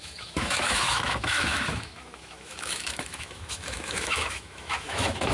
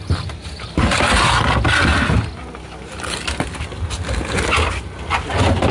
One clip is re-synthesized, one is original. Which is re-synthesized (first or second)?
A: first